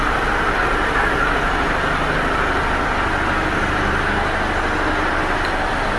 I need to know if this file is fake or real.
real